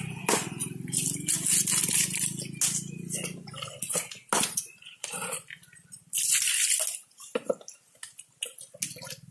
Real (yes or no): yes